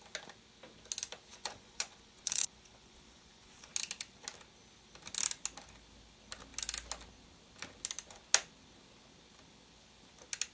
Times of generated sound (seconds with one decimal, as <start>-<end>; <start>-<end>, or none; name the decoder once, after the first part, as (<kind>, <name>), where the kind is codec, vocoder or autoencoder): 1.3-3.7 (vocoder, Vocos)

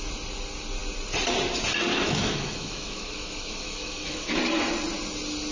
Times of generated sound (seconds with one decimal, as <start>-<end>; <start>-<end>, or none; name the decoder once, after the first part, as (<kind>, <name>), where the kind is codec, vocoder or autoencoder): 1.9-4.4 (autoencoder, DAC-VAE)

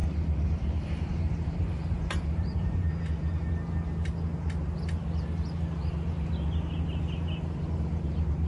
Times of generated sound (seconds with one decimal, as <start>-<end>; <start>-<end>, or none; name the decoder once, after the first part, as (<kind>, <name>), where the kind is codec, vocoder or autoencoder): 0.0-3.5 (vocoder, BigVGAN v2)

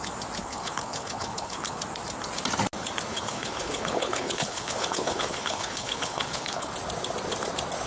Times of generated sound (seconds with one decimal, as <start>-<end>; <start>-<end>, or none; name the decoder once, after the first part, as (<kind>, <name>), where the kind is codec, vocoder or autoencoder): 0.4-1.8 (codec, HILCodec); 3.1-6.7

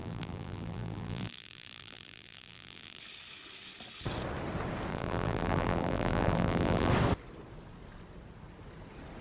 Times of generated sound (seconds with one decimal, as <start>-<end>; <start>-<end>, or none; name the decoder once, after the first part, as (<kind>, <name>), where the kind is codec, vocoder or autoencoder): 0.0-3.0 (vocoder, BigVGAN v2); 4.9-6.9

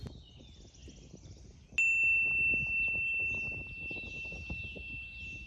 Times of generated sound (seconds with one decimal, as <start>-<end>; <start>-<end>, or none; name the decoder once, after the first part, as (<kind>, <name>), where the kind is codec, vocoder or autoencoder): none

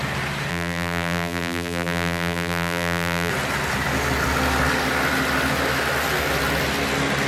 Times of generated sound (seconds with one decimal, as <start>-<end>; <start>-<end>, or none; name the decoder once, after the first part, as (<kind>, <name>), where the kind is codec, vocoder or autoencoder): 0.5-3.3 (vocoder, BigVGAN v2)